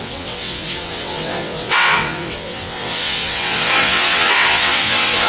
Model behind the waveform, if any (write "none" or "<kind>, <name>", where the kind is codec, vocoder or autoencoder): vocoder, WaveNeXt